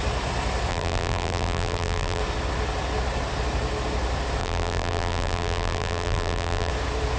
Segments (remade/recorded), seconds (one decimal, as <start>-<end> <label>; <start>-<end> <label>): 0.0-0.7 recorded; 0.7-2.2 remade; 2.2-4.4 recorded; 4.4-6.7 remade; 6.7-7.2 recorded